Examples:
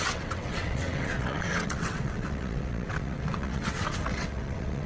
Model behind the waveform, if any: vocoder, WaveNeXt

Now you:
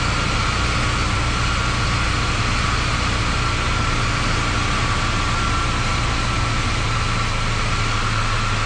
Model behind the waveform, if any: none